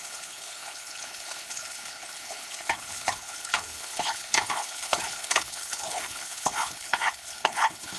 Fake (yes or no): yes